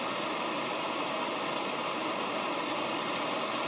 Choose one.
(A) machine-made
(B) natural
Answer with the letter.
B